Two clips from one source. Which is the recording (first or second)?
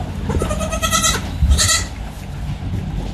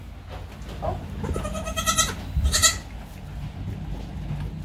second